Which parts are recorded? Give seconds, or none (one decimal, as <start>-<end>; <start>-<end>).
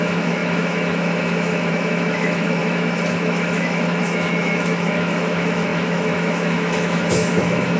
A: none